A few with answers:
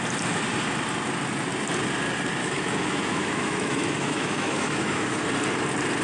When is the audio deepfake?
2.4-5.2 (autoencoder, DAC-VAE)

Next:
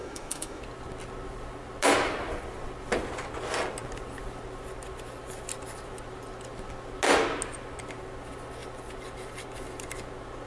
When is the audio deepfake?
0.0-0.6 (autoencoder, DAC-VAE)

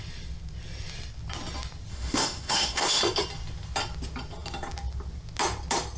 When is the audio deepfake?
1.9-3.0 (autoencoder, DAC-VAE)